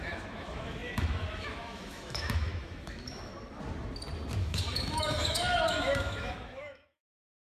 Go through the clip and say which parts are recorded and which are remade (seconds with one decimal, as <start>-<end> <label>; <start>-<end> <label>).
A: 0.0-3.3 remade; 3.3-4.4 recorded; 4.4-7.5 remade